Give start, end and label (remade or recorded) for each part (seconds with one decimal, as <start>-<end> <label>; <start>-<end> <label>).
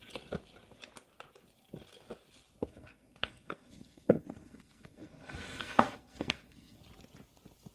0.0-2.7 recorded; 2.7-6.8 remade; 6.8-7.7 recorded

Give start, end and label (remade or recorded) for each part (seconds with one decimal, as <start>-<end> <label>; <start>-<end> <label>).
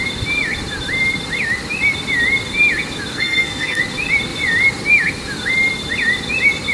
0.0-3.1 recorded; 3.1-3.8 remade; 3.8-6.7 recorded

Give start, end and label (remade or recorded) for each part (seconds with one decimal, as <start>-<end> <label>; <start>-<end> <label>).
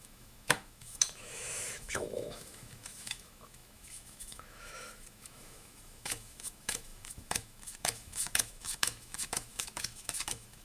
0.0-10.6 remade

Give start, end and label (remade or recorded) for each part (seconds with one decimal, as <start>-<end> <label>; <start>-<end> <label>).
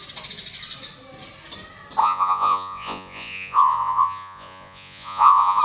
0.0-2.0 recorded; 2.0-5.6 remade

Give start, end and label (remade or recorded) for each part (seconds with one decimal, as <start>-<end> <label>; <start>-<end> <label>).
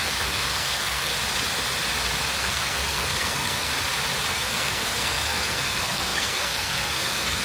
0.0-1.1 remade; 1.1-2.4 recorded; 2.4-3.7 remade; 3.7-4.3 recorded; 4.3-7.4 remade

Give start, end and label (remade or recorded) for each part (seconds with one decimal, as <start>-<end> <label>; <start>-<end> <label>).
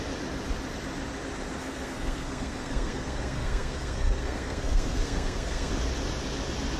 0.0-1.6 recorded; 1.6-5.7 remade; 5.7-6.8 recorded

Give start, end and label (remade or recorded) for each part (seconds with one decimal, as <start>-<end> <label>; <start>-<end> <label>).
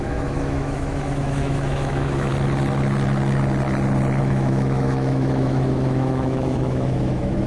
0.0-2.3 remade; 2.3-4.2 recorded; 4.2-7.5 remade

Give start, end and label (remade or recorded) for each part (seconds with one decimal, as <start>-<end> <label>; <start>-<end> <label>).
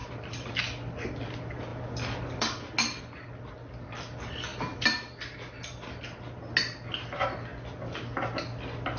0.0-9.0 recorded